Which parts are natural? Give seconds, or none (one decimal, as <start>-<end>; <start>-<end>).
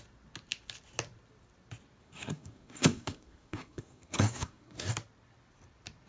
0.0-2.0; 4.9-6.1